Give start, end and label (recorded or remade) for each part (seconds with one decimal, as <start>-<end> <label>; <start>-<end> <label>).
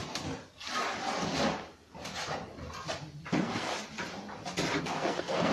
0.0-3.3 recorded; 3.3-3.7 remade; 3.7-4.8 recorded; 4.8-5.5 remade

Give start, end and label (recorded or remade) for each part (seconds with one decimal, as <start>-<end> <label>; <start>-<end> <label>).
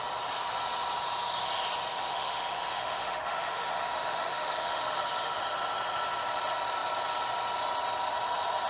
0.0-1.9 recorded; 1.9-5.4 remade; 5.4-8.7 recorded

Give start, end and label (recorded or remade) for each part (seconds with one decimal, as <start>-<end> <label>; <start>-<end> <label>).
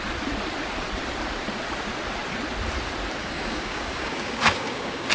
0.0-3.2 recorded; 3.2-5.1 remade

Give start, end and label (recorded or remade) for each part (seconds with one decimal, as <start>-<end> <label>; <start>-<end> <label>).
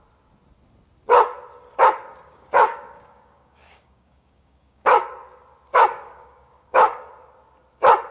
0.0-2.1 recorded; 2.1-5.0 remade; 5.0-5.7 recorded; 5.7-7.1 remade; 7.1-8.1 recorded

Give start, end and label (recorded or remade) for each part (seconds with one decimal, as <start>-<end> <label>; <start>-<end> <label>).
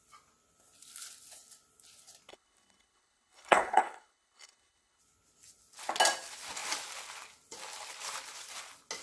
0.0-2.3 recorded; 2.3-5.0 remade; 5.0-9.0 recorded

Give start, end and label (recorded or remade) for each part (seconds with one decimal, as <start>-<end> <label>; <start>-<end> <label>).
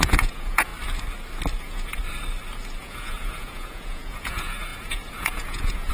0.0-0.7 remade; 0.7-1.6 recorded; 1.6-2.0 remade; 2.0-2.8 recorded; 2.8-5.9 remade